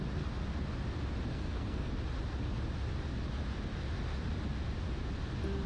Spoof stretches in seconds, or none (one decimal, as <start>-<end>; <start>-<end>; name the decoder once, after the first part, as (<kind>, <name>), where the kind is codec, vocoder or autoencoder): 1.3-1.9 (codec, SNAC)